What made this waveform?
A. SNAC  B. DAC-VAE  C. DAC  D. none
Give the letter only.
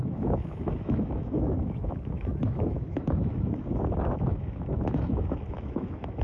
B